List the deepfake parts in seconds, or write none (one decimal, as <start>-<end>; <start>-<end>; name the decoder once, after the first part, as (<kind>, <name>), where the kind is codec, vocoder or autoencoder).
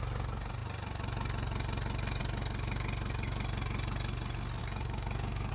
4.6-5.5 (codec, DAC)